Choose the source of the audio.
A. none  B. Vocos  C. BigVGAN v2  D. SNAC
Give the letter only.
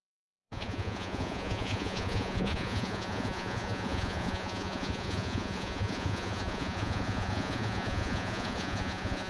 B